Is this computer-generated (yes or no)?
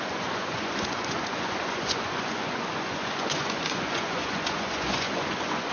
yes